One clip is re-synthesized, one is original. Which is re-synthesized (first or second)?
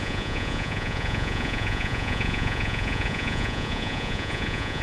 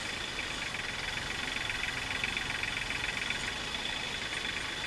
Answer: first